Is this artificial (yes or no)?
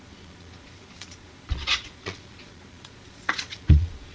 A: yes